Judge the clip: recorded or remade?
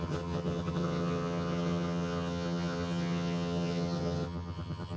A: remade